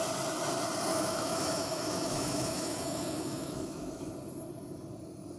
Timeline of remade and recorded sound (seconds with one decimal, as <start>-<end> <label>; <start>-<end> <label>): 0.0-0.9 recorded; 0.9-4.1 remade; 4.1-5.4 recorded